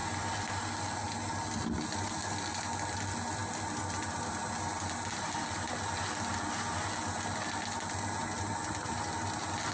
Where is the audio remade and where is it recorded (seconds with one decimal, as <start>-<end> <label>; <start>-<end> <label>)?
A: 0.0-9.7 recorded